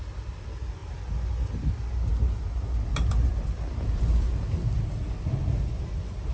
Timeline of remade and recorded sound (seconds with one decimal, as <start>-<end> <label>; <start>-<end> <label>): 0.0-6.3 recorded